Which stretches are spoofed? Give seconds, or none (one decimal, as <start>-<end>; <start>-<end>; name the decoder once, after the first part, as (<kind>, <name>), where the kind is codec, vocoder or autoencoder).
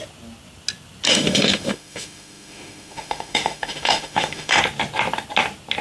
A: 1.1-4.6 (autoencoder, DAC-VAE)